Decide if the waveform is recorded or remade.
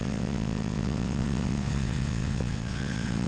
remade